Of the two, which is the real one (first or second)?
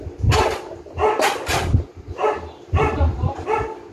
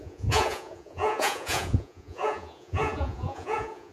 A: first